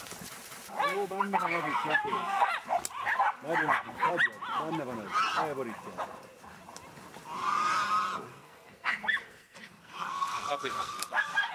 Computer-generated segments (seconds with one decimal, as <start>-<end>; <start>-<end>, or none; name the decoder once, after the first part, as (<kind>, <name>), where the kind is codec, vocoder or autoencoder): 0.9-2.5 (codec, SNAC); 3.6-4.1; 8.3-11.5